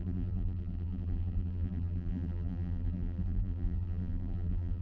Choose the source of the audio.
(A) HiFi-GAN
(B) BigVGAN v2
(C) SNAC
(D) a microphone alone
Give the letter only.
B